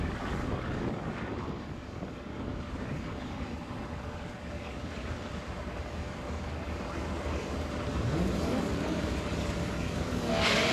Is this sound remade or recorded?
remade